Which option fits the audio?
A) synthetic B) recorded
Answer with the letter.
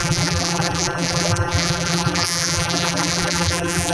A